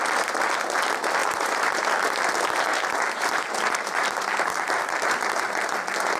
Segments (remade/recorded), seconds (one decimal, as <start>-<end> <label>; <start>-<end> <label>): 0.0-1.2 recorded; 1.2-1.8 remade; 1.8-2.7 recorded; 2.7-5.2 remade; 5.2-6.2 recorded